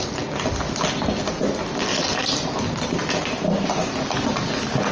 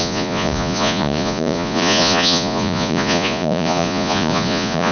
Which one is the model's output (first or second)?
second